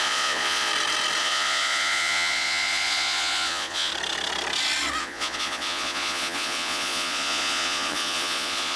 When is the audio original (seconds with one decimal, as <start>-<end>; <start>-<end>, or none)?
0.7-1.2; 3.9-5.0